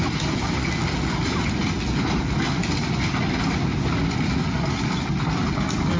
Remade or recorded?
recorded